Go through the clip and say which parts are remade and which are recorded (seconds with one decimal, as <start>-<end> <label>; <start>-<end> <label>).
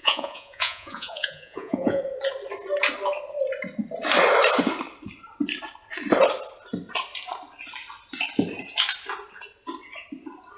0.0-2.0 remade; 2.0-10.6 recorded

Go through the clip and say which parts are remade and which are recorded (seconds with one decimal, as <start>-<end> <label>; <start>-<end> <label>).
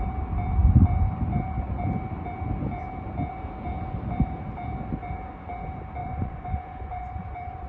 0.0-6.0 recorded; 6.0-7.3 remade; 7.3-7.7 recorded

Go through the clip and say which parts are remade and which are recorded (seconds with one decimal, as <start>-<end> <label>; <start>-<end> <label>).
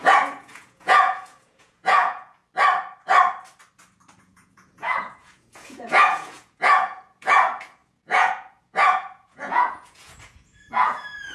0.0-2.4 remade; 2.4-4.2 recorded; 4.2-11.3 remade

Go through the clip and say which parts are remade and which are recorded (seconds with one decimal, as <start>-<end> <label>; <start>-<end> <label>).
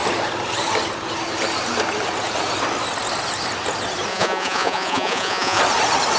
0.0-4.1 recorded; 4.1-5.6 remade; 5.6-6.2 recorded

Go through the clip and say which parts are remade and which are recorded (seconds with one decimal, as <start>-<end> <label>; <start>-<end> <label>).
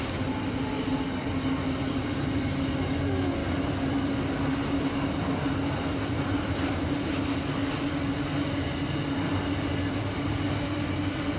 0.0-11.4 recorded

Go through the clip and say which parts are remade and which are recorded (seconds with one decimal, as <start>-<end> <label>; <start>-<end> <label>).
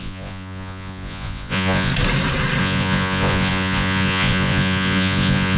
0.0-1.9 remade; 1.9-2.6 recorded; 2.6-5.6 remade